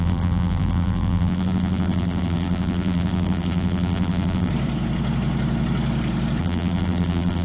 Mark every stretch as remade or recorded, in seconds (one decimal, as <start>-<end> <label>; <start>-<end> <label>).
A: 0.0-4.5 remade; 4.5-6.4 recorded; 6.4-7.4 remade

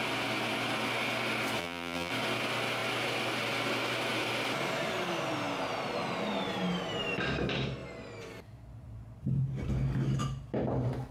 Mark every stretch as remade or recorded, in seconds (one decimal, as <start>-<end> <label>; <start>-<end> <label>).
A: 0.0-1.6 recorded; 1.6-2.1 remade; 2.1-11.1 recorded

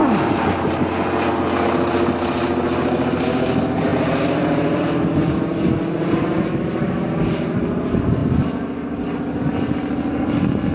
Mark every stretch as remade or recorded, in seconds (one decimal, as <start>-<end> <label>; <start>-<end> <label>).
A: 0.0-0.5 remade; 0.5-3.9 recorded; 3.9-5.2 remade; 5.2-10.7 recorded

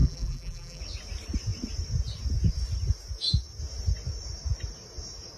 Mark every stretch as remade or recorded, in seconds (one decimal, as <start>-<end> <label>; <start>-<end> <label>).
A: 0.0-0.8 remade; 0.8-5.4 recorded